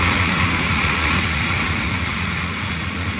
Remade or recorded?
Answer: remade